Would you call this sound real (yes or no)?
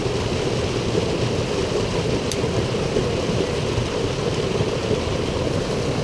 yes